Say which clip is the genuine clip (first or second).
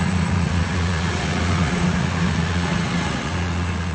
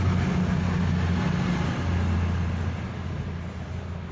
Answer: second